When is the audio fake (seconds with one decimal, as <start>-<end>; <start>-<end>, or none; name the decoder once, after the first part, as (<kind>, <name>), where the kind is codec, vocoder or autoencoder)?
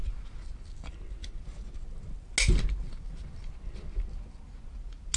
none